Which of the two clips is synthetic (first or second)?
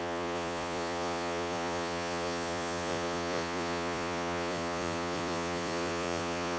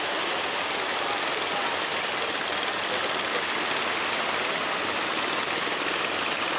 first